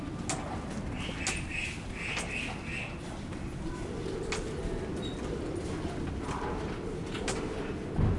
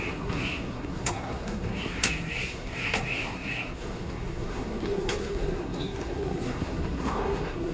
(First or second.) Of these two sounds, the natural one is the first